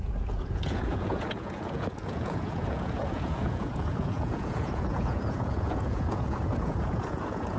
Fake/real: fake